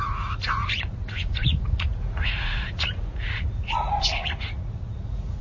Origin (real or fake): fake